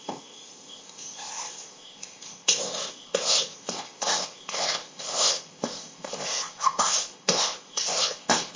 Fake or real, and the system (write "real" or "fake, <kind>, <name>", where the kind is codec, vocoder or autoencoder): fake, codec, ZipCodec